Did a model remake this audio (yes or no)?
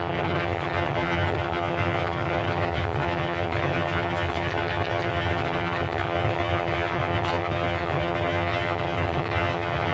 yes